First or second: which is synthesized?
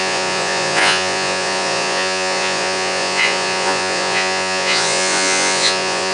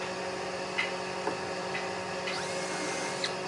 first